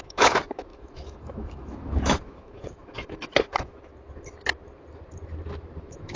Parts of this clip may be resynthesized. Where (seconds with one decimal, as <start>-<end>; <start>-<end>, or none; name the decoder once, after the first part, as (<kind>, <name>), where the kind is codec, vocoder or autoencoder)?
0.0-3.9 (autoencoder, DAC-VAE); 5.8-6.2